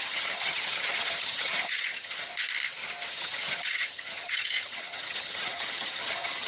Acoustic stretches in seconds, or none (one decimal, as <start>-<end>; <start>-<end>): 2.3-3.1